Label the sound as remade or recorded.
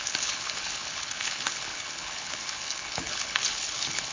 remade